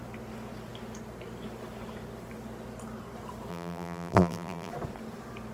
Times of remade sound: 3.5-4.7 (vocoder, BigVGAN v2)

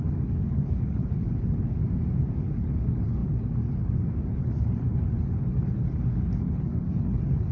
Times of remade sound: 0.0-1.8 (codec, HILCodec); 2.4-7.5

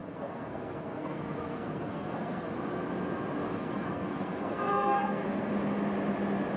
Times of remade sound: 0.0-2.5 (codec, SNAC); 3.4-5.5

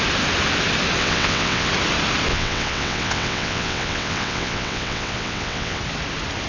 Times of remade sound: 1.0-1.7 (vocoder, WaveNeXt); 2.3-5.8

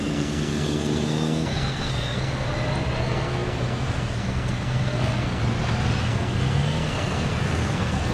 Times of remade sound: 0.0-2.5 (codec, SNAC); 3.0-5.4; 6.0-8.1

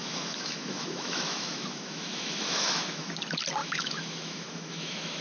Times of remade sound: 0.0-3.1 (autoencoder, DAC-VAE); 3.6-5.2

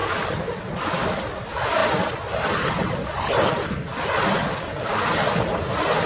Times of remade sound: none